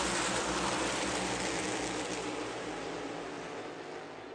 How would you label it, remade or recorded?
recorded